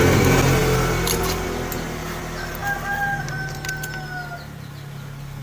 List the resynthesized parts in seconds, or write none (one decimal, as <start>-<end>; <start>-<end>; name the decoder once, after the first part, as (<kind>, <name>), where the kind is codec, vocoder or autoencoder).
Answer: none